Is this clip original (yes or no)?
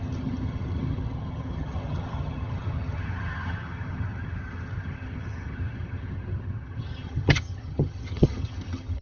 no